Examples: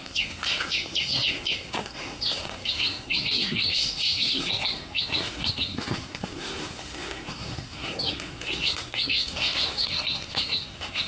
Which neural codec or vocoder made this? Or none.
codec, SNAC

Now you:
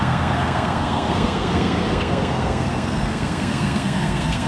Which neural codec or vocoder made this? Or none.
codec, SNAC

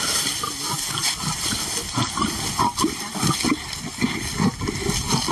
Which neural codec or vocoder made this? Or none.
none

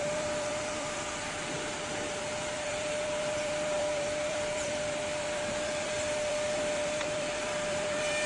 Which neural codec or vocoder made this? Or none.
vocoder, BigVGAN v2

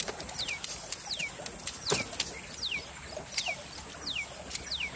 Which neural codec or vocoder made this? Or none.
none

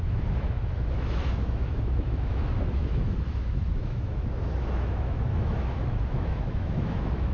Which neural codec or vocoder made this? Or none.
autoencoder, DAC-VAE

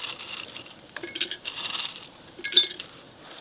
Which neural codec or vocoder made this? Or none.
vocoder, BigVGAN v2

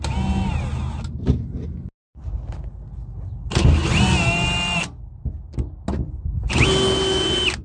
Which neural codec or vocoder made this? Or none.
none